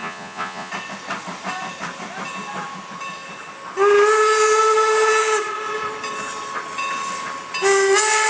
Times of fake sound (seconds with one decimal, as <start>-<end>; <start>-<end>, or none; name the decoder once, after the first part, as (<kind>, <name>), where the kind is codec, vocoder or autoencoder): 0.0-0.7 (vocoder, Vocos)